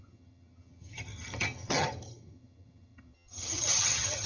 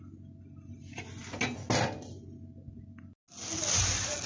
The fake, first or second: first